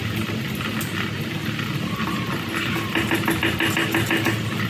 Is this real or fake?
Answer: real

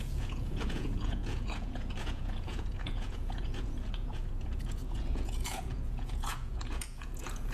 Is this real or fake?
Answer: fake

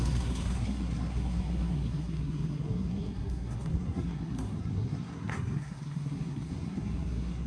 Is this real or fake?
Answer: fake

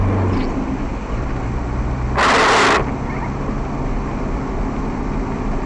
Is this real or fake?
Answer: real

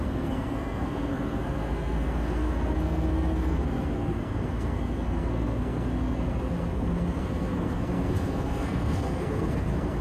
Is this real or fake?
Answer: fake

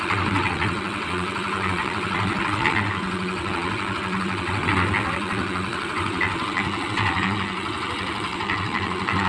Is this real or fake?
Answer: fake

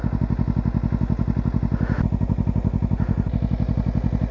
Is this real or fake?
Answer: real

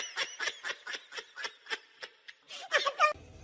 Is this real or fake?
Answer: real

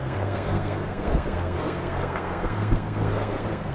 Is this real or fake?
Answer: fake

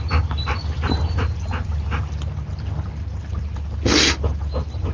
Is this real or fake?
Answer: real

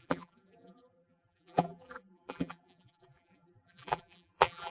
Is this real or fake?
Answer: fake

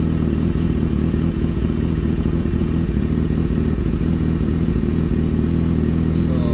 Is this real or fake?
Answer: fake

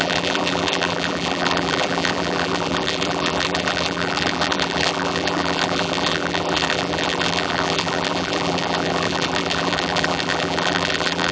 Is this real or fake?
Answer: fake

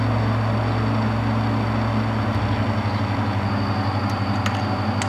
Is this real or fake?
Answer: real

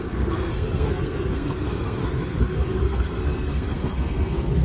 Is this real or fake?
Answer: fake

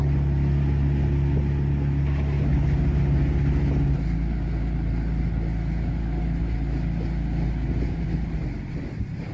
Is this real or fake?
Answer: real